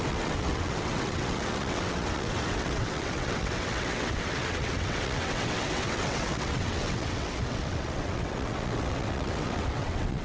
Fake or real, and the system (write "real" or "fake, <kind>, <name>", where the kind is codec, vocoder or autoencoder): fake, vocoder, WaveNeXt